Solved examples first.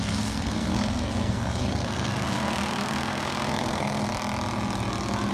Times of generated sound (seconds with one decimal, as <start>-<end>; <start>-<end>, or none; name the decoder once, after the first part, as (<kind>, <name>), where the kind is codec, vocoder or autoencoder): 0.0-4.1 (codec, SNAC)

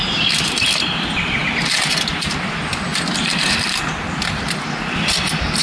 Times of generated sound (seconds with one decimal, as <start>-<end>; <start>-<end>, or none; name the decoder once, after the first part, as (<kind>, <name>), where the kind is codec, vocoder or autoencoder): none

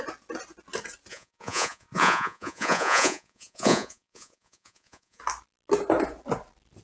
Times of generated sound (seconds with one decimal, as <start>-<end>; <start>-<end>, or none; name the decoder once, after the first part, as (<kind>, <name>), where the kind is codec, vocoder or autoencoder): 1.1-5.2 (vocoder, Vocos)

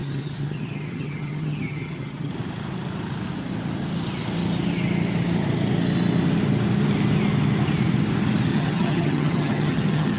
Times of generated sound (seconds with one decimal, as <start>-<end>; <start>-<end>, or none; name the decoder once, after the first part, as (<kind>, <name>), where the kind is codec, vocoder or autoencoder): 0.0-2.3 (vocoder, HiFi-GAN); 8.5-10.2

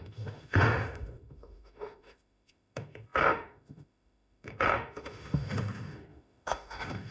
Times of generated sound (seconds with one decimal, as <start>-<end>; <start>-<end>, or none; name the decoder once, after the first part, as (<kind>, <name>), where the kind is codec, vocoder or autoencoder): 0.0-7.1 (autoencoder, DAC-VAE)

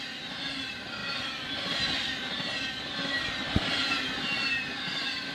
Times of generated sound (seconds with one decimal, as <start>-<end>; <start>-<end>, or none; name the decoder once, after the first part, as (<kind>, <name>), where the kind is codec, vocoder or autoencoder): none

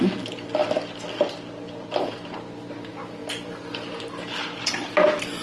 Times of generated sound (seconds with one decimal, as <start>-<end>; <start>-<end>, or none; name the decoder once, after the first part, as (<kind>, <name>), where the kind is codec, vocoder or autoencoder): none